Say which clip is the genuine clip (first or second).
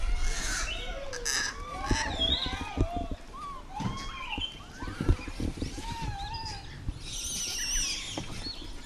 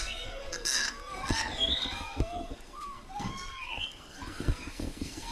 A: first